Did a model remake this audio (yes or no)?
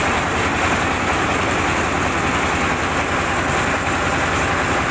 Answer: no